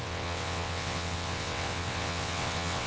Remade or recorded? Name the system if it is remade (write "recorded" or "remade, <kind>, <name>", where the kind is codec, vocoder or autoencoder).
remade, vocoder, WaveNeXt